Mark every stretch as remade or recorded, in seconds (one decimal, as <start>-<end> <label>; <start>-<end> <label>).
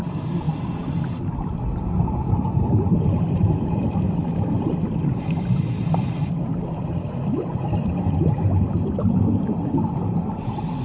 0.0-10.8 remade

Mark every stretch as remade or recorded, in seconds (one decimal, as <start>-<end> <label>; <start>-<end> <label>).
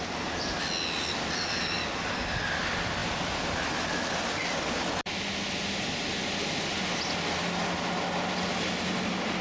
0.0-9.4 recorded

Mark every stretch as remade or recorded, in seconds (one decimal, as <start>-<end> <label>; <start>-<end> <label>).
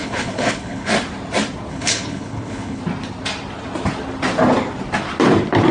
0.0-0.9 remade; 0.9-1.7 recorded; 1.7-2.8 remade; 2.8-5.7 recorded